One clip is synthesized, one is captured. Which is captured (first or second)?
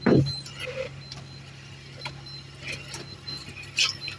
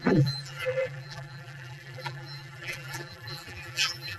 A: first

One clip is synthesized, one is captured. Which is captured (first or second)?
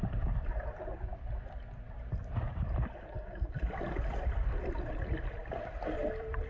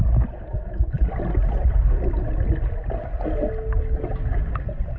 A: second